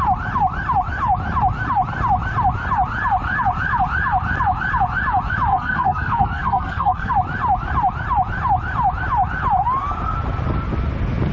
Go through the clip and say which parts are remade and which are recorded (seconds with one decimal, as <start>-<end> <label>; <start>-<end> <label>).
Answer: 0.0-5.5 recorded; 5.5-7.1 remade; 7.1-11.3 recorded